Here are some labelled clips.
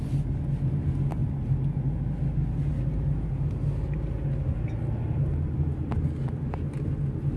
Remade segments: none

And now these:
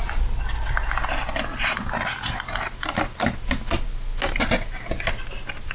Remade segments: none

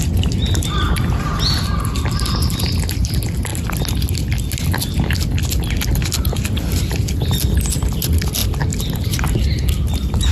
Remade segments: none

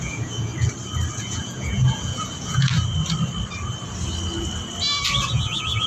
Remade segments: 0.0-0.5 (vocoder, Vocos); 1.2-2.7; 5.3-5.9